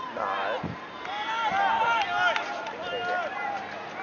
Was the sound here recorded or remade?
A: recorded